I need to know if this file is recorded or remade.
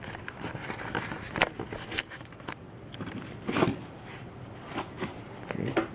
recorded